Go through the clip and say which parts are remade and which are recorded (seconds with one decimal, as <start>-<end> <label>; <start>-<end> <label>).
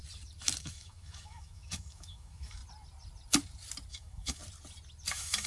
0.0-0.6 recorded; 0.6-2.6 remade; 2.6-3.9 recorded; 3.9-4.4 remade; 4.4-5.1 recorded; 5.1-5.5 remade